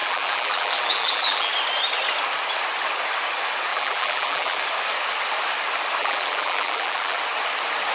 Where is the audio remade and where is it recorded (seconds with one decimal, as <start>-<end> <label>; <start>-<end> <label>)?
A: 0.0-1.5 remade; 1.5-3.7 recorded; 3.7-4.6 remade; 4.6-6.0 recorded; 6.0-7.2 remade; 7.2-7.9 recorded